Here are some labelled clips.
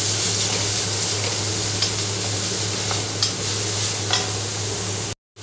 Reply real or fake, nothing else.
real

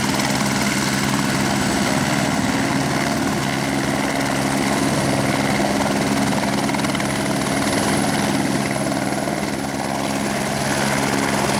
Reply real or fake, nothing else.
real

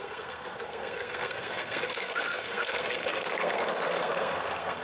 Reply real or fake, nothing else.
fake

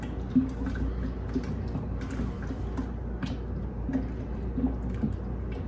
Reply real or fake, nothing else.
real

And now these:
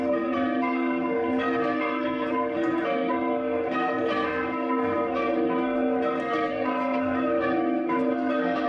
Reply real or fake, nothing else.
fake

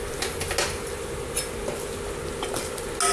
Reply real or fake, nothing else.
real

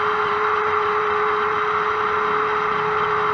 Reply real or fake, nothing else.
real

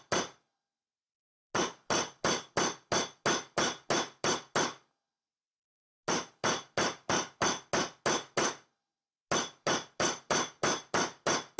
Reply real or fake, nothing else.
real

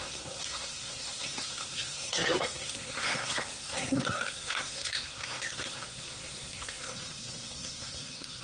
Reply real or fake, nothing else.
fake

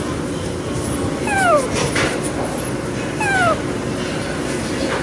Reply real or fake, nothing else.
real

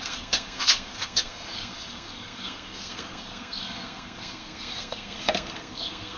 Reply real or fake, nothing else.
fake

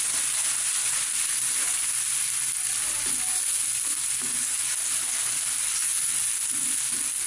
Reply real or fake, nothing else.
real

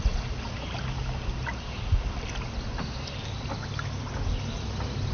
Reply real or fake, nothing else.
real